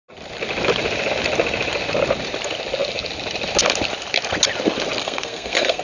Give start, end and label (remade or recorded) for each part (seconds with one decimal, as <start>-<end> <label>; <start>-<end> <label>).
0.0-5.0 recorded; 5.0-5.8 remade